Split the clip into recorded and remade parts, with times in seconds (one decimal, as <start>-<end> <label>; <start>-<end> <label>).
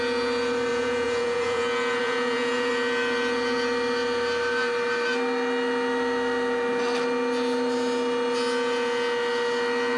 0.0-0.7 recorded; 0.7-1.6 remade; 1.6-2.0 recorded; 2.0-2.7 remade; 2.7-10.0 recorded